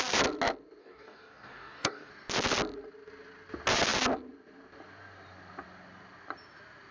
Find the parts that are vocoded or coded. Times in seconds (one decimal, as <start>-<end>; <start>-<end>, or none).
0.8-2.1